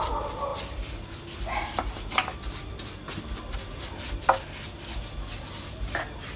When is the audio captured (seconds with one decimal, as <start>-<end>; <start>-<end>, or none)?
0.0-6.4